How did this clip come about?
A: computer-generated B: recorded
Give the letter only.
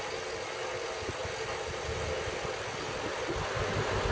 B